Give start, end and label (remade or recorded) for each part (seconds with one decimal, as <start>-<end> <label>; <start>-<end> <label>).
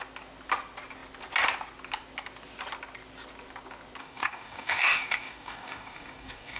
0.0-4.0 recorded; 4.0-6.6 remade